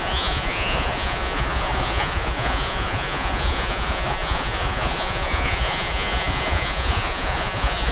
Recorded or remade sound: remade